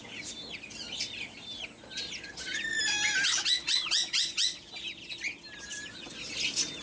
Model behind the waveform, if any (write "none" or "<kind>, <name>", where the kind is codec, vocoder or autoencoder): none